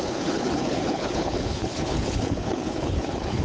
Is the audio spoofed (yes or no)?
yes